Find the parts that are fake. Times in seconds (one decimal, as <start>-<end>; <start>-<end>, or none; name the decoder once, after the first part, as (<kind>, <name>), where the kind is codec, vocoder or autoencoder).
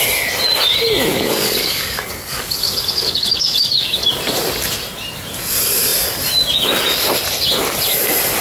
1.1-4.1 (codec, DAC)